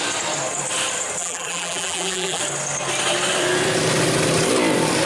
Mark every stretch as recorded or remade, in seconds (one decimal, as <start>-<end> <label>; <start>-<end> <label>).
0.0-1.2 recorded; 1.2-2.4 remade; 2.4-5.1 recorded